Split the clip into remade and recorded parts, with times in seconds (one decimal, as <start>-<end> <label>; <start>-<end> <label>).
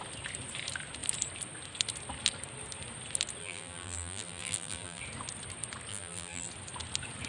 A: 0.0-3.4 recorded; 3.4-5.0 remade; 5.0-5.9 recorded; 5.9-6.5 remade; 6.5-7.3 recorded